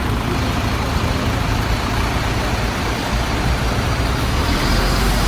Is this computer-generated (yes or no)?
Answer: yes